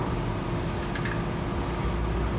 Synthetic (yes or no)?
no